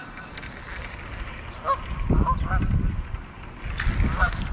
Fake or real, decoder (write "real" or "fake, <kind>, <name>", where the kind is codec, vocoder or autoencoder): real